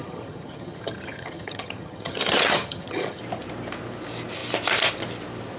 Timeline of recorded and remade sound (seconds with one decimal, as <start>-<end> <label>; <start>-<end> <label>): 0.0-3.2 remade; 3.2-5.6 recorded